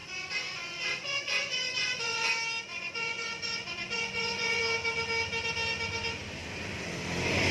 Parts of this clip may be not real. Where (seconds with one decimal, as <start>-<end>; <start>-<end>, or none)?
0.0-2.3; 2.7-4.6